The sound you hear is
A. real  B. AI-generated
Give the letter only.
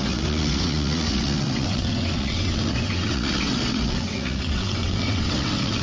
B